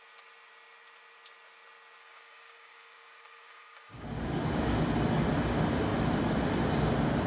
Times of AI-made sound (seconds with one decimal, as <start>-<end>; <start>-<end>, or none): 2.0-4.8